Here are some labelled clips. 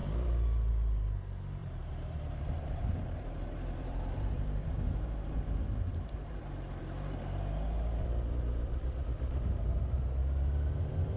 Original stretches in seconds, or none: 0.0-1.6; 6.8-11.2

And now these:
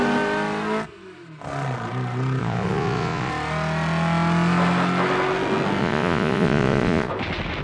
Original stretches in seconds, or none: 0.0-2.4; 3.3-5.8; 7.1-7.6

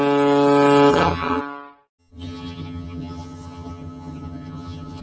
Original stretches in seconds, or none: 0.0-0.9; 1.4-2.0